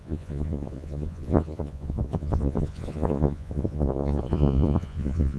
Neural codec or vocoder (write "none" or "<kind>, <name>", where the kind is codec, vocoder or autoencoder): vocoder, Vocos